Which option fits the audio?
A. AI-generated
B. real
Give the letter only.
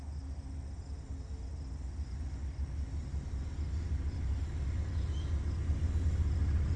B